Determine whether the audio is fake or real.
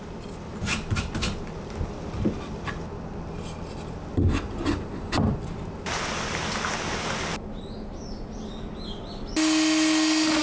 real